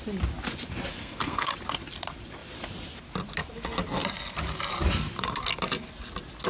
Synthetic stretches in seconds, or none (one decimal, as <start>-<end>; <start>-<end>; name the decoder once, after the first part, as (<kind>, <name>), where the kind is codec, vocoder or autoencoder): 1.0-1.5 (codec, SNAC)

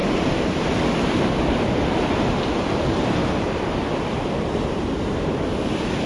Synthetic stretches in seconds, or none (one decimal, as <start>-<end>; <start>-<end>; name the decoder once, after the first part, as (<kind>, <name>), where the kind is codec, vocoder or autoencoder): none

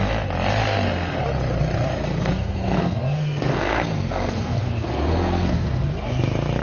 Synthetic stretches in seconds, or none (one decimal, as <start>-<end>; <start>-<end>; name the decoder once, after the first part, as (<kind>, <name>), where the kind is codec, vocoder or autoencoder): 0.6-1.2 (codec, SNAC); 1.9-5.9

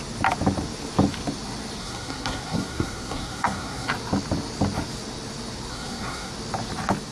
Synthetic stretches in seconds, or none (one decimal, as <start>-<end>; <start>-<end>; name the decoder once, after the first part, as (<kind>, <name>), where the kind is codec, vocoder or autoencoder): 1.8-3.9 (codec, SNAC); 5.7-6.3

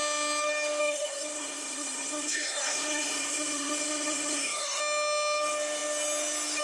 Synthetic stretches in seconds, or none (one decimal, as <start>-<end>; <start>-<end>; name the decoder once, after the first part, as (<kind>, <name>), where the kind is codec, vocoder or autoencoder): 0.8-4.8 (codec, SNAC)

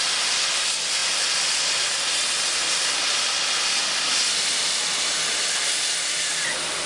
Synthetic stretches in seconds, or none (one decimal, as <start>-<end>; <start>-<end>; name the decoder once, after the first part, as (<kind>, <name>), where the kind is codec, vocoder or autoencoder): none

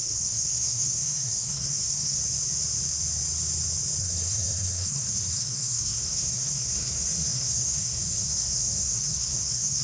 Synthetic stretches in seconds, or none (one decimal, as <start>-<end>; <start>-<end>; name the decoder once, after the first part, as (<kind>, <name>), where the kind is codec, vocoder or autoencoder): 0.0-2.2 (codec, SNAC); 4.0-9.8